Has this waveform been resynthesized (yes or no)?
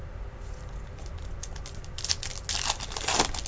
no